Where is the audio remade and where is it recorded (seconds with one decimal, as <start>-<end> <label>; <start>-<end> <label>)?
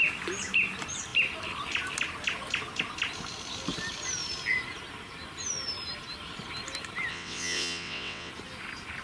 0.0-7.1 recorded; 7.1-8.3 remade; 8.3-9.0 recorded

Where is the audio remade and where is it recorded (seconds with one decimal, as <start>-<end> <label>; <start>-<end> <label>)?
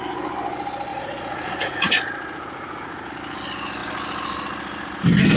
0.0-0.9 recorded; 0.9-3.1 remade; 3.1-5.4 recorded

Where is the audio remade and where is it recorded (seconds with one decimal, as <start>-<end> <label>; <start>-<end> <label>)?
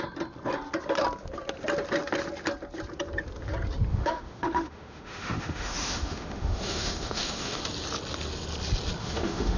0.0-3.9 recorded; 3.9-7.6 remade; 7.6-9.0 recorded; 9.0-9.6 remade